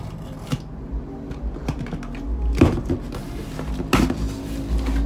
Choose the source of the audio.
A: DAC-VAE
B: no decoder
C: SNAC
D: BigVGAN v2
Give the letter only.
B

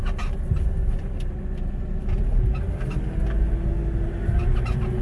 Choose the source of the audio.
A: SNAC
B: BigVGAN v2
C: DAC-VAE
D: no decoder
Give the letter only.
D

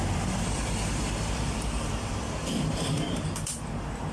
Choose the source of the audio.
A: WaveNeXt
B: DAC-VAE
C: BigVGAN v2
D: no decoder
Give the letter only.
C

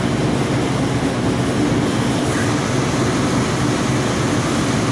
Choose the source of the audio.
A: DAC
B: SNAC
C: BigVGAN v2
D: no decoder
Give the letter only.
D